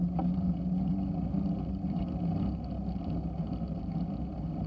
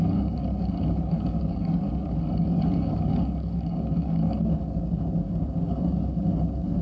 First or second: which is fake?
second